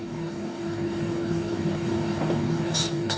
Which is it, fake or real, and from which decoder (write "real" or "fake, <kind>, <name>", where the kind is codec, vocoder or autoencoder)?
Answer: fake, codec, DAC